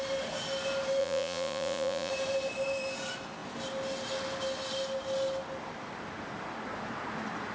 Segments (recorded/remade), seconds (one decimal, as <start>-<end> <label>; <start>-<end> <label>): 0.0-1.0 recorded; 1.0-2.1 remade; 2.1-7.5 recorded